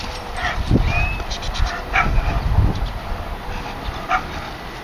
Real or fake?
real